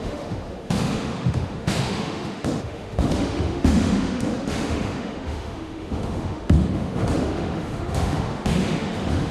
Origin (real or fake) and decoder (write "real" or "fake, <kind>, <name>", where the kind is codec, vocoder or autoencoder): fake, autoencoder, DAC-VAE